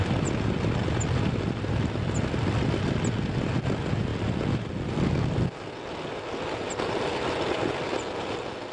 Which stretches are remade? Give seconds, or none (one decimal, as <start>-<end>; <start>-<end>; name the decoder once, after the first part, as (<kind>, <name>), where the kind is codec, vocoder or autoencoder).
none